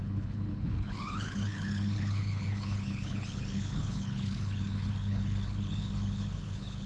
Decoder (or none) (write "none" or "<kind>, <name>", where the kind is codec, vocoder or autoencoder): codec, HILCodec